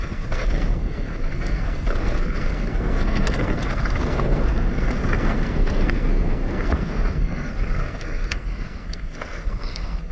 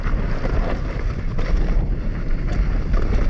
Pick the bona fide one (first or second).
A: second